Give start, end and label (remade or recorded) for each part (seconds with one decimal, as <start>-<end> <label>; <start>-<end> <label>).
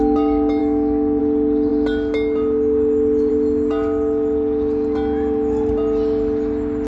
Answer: 0.0-0.6 recorded; 0.6-1.2 remade; 1.2-6.9 recorded